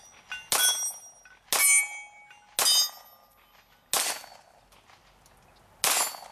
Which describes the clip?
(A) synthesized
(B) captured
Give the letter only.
B